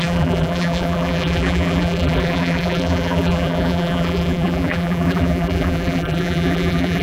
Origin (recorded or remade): remade